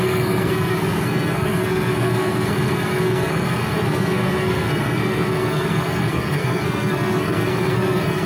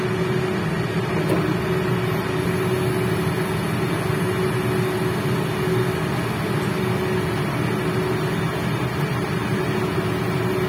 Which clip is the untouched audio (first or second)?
second